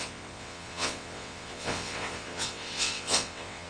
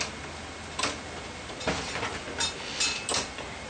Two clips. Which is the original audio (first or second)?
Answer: second